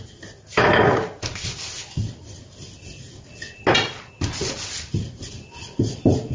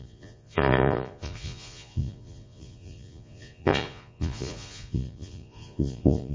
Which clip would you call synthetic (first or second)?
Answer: second